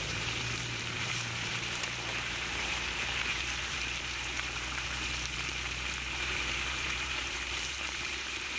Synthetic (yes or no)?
yes